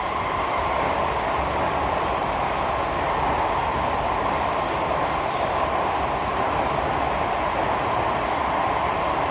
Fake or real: real